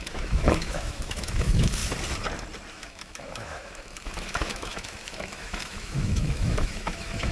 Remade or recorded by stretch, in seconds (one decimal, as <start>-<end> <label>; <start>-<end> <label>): 0.0-1.8 remade; 1.8-2.7 recorded; 2.7-7.3 remade